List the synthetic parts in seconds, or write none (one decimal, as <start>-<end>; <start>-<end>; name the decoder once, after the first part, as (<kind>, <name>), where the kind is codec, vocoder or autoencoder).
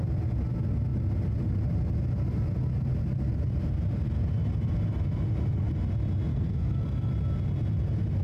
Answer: 6.3-7.1 (codec, SNAC)